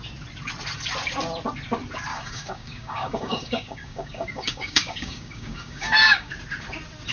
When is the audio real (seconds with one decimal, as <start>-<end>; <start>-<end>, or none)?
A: 0.0-2.1; 6.3-7.1